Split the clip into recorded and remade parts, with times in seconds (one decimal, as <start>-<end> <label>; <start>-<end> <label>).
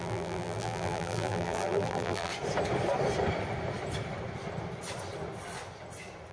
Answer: 0.0-2.3 remade; 2.3-6.3 recorded